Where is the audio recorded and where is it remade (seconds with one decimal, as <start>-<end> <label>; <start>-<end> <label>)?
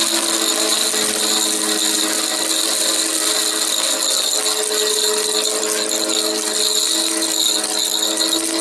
0.0-8.6 recorded